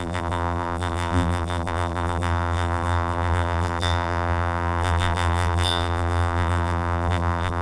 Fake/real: fake